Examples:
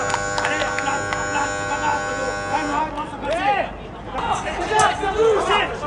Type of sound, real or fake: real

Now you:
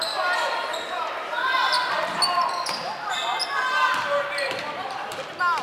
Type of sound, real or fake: real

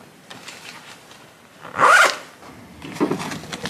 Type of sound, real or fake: real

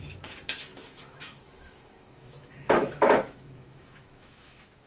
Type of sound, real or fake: fake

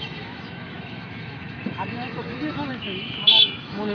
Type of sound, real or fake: fake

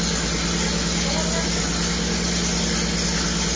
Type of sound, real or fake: real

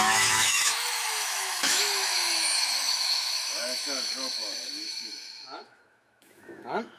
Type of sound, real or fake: fake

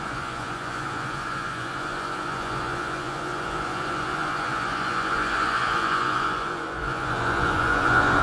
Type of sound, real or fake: fake